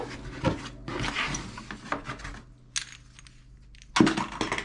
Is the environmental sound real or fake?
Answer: real